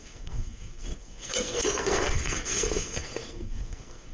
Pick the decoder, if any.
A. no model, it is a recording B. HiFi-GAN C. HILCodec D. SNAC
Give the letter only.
D